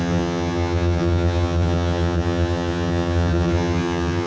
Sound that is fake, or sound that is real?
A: fake